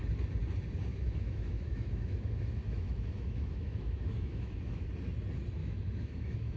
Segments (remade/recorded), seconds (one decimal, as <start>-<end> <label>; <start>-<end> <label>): 0.0-0.9 recorded; 0.9-4.9 remade; 4.9-5.6 recorded; 5.6-6.6 remade